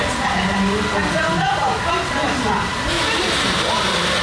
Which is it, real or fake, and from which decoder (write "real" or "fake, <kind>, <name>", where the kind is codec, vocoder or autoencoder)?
real